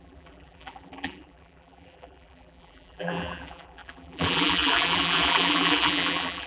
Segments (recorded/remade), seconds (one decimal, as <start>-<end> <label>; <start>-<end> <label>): 0.0-6.5 remade